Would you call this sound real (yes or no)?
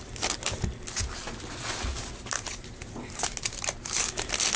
yes